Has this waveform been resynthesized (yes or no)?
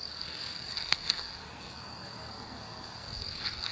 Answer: yes